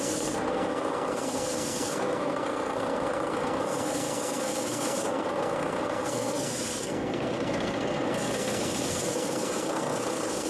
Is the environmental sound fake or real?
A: fake